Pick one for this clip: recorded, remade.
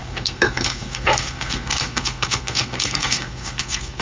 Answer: remade